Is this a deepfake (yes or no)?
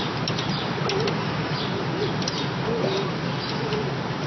no